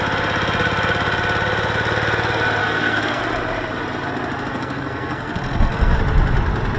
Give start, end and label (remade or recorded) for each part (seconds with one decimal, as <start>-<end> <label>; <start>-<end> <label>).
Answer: 0.0-2.6 recorded; 2.6-3.2 remade; 3.2-4.5 recorded; 4.5-6.0 remade; 6.0-6.8 recorded